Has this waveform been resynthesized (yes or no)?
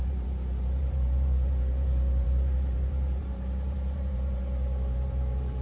yes